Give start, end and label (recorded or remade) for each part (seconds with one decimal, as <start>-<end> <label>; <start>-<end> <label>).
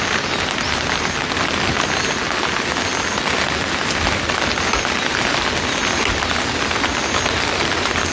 0.0-8.1 recorded